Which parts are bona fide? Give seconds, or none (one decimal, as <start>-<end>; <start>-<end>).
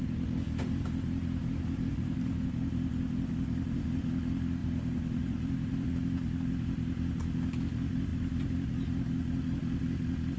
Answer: 0.0-1.9; 2.5-4.6; 5.9-10.4